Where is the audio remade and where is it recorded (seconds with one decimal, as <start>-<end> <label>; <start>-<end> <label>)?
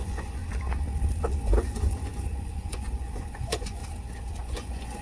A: 0.0-0.4 remade; 0.4-1.4 recorded; 1.4-3.8 remade; 3.8-4.4 recorded; 4.4-5.0 remade